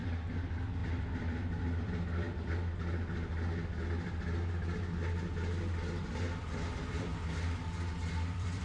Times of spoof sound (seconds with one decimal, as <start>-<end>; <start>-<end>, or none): 0.8-2.5; 6.0-8.6